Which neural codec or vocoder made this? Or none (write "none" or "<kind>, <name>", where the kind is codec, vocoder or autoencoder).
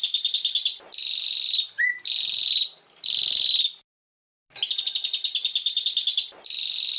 none